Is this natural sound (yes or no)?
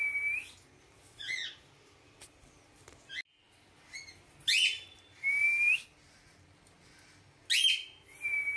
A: yes